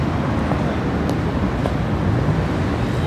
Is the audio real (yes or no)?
yes